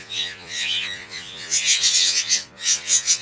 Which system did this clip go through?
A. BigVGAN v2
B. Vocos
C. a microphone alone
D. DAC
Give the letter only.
B